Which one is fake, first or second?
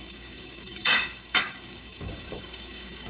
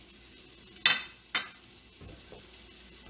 first